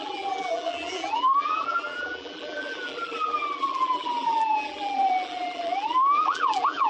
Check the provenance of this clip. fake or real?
fake